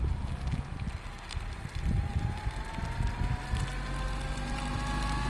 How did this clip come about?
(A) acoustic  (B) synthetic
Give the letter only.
A